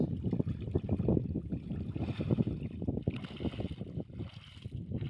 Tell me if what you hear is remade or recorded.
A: recorded